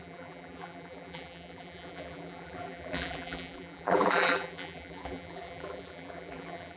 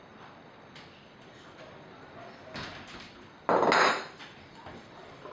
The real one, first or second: second